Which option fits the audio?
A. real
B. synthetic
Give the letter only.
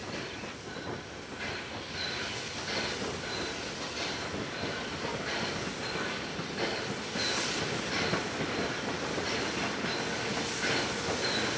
A